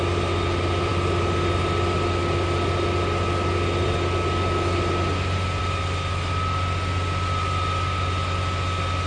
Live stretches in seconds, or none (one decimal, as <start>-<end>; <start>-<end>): 0.0-9.1